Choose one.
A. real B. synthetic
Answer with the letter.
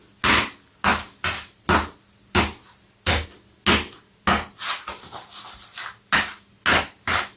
A